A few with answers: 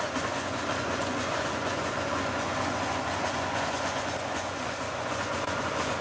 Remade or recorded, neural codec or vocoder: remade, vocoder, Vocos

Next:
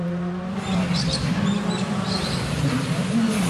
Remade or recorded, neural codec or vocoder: recorded